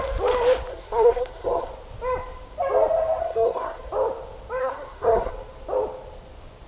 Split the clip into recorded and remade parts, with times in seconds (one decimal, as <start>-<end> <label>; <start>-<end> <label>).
0.0-0.7 recorded; 0.7-1.7 remade; 1.7-3.2 recorded; 3.2-3.8 remade; 3.8-4.6 recorded; 4.6-5.3 remade; 5.3-6.7 recorded